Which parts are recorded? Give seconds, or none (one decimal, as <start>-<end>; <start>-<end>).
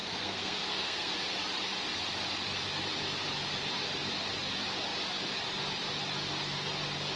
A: 1.1-7.2